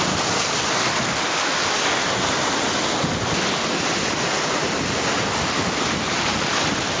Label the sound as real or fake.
real